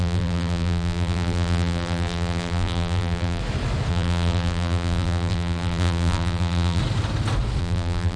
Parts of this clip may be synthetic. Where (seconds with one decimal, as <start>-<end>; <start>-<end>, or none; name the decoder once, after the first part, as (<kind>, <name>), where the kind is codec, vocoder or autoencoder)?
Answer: 0.0-3.4 (vocoder, BigVGAN v2); 3.9-6.8; 7.6-8.2